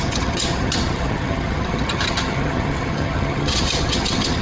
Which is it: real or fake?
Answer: fake